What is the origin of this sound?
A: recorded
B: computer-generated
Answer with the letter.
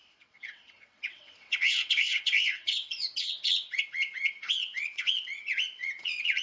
B